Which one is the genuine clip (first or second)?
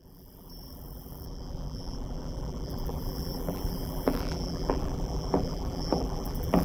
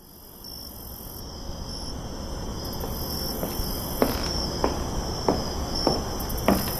second